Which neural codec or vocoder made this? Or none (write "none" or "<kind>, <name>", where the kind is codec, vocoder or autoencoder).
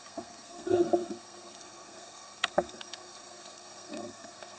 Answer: codec, SNAC